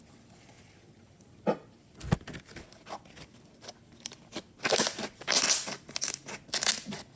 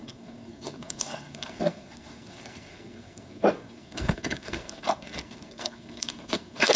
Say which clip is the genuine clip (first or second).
first